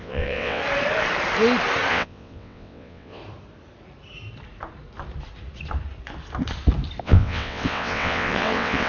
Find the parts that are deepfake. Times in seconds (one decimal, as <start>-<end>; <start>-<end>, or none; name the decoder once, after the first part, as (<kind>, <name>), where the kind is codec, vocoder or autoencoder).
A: 0.0-0.6 (vocoder, WaveNeXt); 1.9-3.2; 7.0-8.9